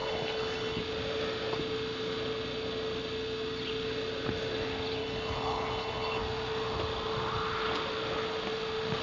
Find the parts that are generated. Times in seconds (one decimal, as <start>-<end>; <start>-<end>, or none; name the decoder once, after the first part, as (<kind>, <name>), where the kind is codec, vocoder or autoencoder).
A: 0.0-0.8 (codec, HILCodec); 5.0-6.2